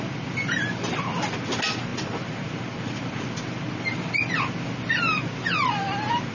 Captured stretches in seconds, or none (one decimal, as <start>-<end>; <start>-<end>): 0.0-6.3